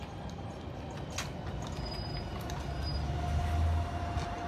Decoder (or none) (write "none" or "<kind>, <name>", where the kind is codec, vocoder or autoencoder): none